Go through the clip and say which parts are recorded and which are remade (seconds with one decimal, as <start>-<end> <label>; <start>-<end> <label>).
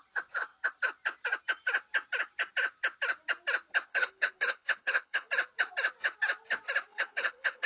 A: 0.0-3.9 recorded; 3.9-5.3 remade; 5.3-6.9 recorded; 6.9-7.7 remade